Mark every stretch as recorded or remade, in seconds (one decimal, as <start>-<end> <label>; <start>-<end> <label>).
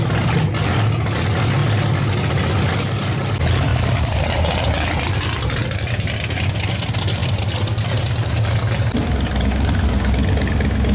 0.0-3.7 recorded; 3.7-4.2 remade; 4.2-7.2 recorded; 7.2-8.3 remade; 8.3-10.9 recorded